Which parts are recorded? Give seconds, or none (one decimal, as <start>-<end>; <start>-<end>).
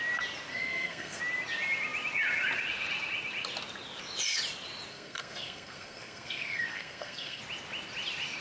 0.0-0.5; 1.2-4.9; 7.4-8.4